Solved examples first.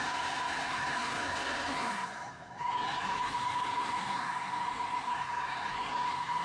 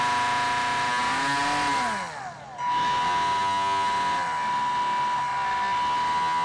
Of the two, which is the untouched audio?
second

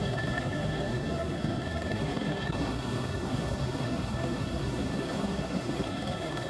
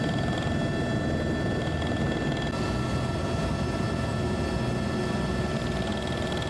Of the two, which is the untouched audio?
second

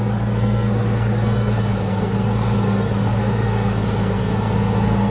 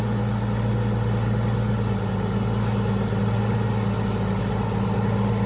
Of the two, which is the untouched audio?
second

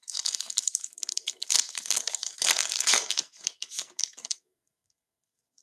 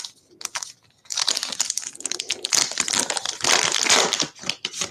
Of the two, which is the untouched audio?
second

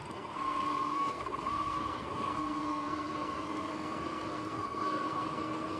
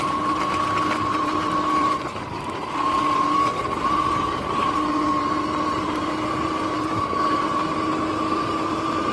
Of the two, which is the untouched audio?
second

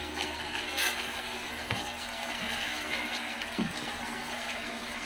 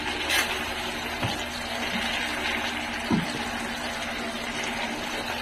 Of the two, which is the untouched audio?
second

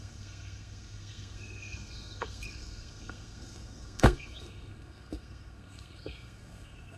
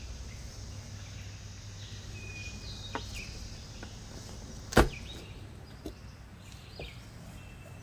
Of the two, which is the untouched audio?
second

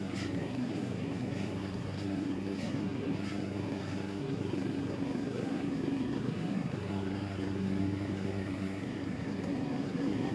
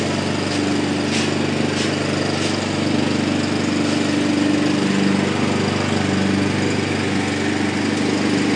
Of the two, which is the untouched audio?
second